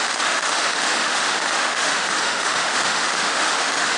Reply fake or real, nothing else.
fake